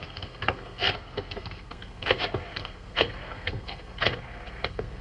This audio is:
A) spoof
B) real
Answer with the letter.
A